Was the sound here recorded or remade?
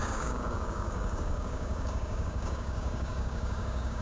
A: remade